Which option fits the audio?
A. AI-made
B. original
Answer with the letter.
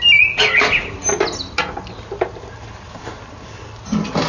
B